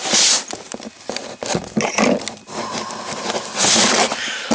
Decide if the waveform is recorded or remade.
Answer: recorded